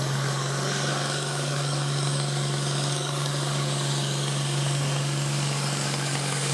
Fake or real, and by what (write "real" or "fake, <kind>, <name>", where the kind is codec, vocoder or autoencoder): fake, codec, DAC